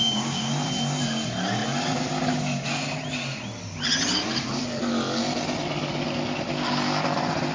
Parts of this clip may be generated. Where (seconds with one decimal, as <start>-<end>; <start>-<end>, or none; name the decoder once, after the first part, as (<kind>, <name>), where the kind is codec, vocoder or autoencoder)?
0.0-0.5 (codec, DAC)